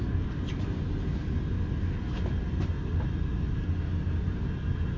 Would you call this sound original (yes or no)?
yes